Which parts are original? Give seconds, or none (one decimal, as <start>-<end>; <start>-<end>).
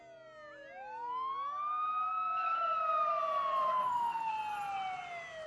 0.0-3.8; 4.3-5.5